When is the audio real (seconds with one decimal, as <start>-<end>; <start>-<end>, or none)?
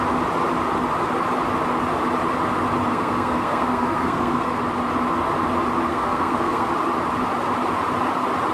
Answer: 0.0-2.9; 4.6-5.9; 6.7-8.5